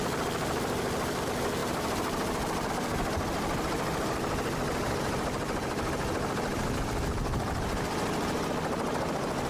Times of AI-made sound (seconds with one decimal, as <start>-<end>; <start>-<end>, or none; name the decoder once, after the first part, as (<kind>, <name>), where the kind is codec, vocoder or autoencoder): 1.6-2.7 (vocoder, BigVGAN v2)